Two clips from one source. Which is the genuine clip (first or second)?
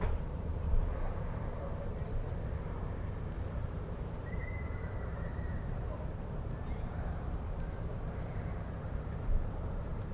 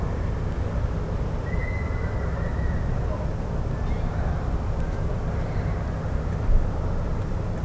second